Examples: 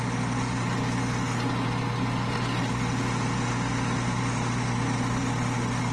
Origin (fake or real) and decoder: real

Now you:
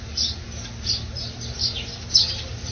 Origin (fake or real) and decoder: fake, vocoder, BigVGAN v2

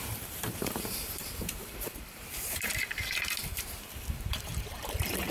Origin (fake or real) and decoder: fake, vocoder, BigVGAN v2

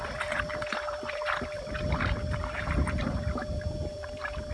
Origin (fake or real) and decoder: fake, vocoder, BigVGAN v2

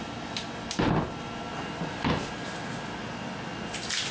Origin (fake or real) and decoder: real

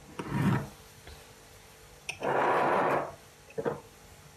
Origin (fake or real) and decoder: real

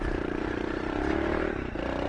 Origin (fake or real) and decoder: fake, vocoder, BigVGAN v2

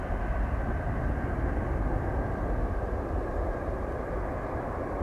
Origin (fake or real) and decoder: real